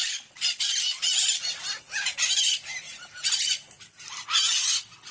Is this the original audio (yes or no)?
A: yes